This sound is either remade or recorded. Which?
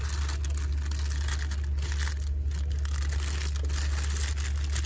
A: recorded